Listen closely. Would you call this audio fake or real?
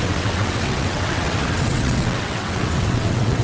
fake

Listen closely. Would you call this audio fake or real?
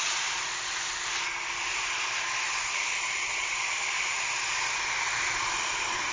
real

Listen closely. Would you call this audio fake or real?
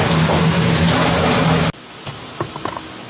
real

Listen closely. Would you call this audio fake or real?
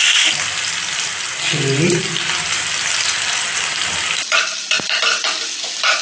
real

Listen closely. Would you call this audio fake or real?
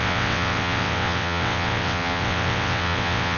fake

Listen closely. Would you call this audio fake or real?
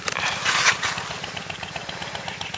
real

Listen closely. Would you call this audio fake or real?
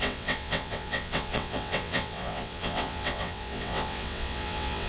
fake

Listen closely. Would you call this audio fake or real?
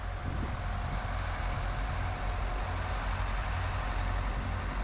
real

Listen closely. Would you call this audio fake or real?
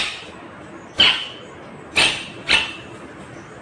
real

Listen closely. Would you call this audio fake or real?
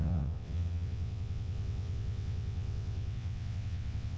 fake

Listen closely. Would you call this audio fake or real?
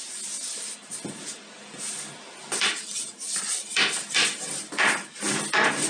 real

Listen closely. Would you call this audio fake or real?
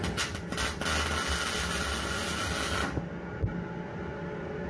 real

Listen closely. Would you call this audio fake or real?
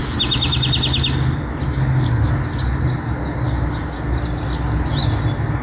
real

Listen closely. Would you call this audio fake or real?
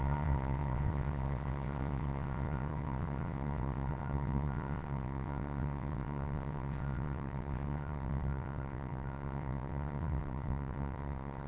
fake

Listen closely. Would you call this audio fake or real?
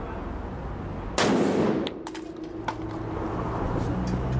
real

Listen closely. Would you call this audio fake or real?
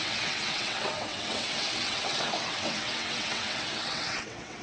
fake